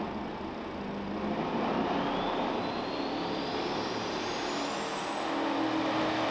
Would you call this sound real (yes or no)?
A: yes